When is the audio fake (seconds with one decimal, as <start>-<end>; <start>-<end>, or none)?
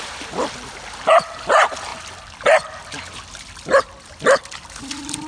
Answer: none